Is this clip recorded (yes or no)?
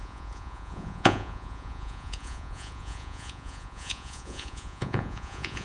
no